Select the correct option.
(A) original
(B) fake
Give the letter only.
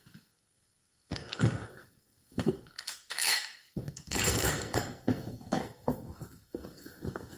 B